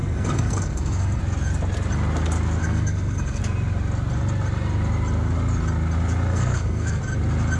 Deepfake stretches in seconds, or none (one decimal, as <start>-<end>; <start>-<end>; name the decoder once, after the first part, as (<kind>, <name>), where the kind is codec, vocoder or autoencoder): 0.0-1.2 (codec, SNAC); 2.6-3.4; 6.3-7.0